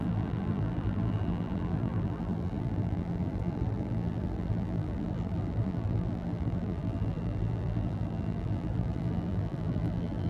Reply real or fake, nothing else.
fake